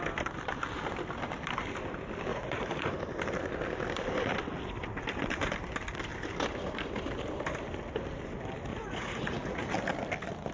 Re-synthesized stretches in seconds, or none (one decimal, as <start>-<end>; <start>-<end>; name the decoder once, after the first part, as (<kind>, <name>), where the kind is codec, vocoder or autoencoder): 2.3-2.9 (vocoder, Vocos); 8.7-9.7